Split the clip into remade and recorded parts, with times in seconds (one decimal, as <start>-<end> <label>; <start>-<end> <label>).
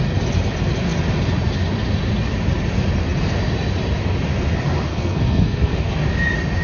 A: 0.0-4.9 recorded; 4.9-5.9 remade; 5.9-6.6 recorded